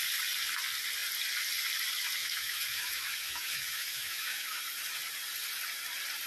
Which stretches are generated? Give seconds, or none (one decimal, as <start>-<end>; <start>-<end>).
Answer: 2.2-4.6